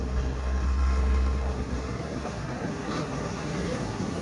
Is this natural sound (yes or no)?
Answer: no